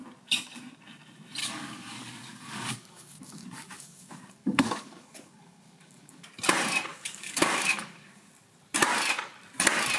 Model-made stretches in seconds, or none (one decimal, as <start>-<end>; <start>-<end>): 1.4-6.3; 6.9-8.3